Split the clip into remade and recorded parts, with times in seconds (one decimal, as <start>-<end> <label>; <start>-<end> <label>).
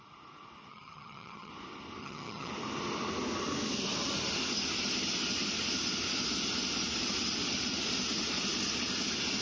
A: 0.0-0.7 recorded; 0.7-1.5 remade; 1.5-2.0 recorded; 2.0-2.5 remade; 2.5-9.4 recorded